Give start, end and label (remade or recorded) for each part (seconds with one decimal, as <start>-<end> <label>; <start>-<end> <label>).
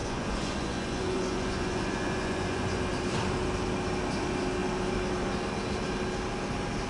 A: 0.0-2.8 remade; 2.8-6.9 recorded